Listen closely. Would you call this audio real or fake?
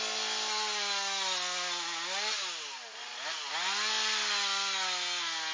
real